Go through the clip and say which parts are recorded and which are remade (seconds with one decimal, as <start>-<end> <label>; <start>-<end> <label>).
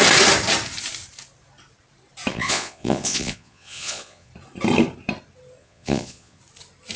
0.0-2.3 recorded; 2.3-4.3 remade; 4.3-5.6 recorded; 5.6-6.4 remade; 6.4-7.0 recorded